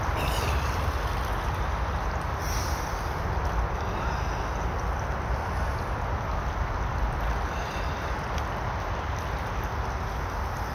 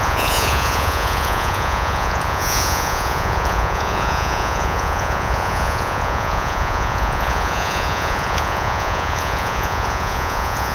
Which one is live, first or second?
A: first